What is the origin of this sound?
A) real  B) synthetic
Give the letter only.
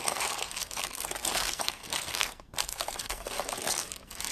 B